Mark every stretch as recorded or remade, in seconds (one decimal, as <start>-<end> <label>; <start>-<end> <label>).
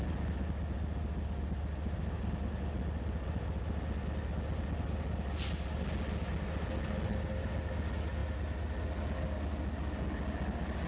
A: 0.0-10.9 recorded